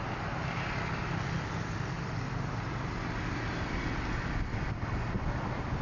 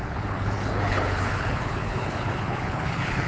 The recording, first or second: first